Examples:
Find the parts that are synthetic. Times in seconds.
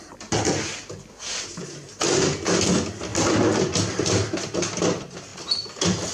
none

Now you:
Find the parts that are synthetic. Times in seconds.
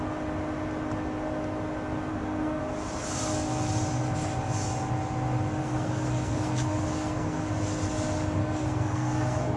2.1-2.6; 5.6-7.5; 8.4-9.6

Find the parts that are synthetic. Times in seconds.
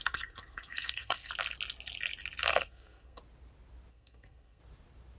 0.0-1.3; 2.5-3.2; 3.9-4.6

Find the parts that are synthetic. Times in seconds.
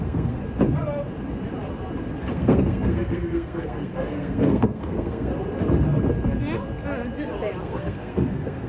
0.0-0.4; 2.2-5.3; 7.6-8.7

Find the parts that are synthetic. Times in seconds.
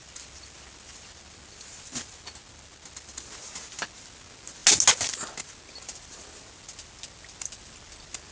none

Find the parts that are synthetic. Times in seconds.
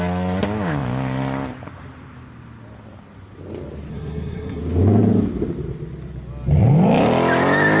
3.9-4.6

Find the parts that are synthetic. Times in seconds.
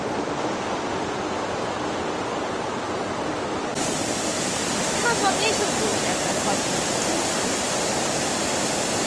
none